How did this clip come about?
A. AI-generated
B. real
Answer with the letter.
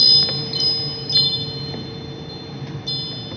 B